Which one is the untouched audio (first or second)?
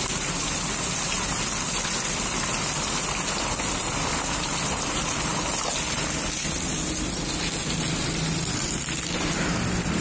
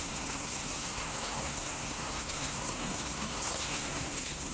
first